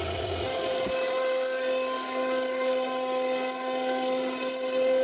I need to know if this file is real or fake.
real